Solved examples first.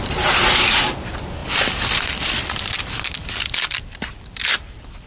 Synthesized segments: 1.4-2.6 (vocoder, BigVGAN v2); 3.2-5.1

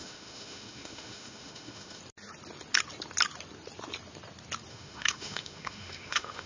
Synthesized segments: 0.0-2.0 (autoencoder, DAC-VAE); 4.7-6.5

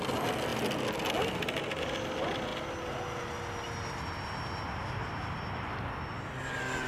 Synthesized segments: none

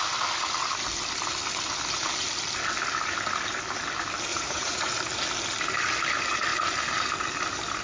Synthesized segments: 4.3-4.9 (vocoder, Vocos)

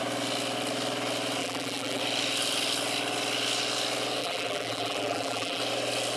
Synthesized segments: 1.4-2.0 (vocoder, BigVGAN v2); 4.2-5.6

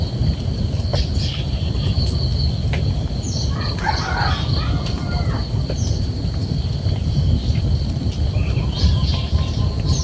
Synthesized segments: 5.1-6.9 (vocoder, BigVGAN v2)

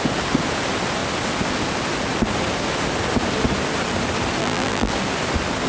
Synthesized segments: 4.4-4.9 (vocoder, BigVGAN v2)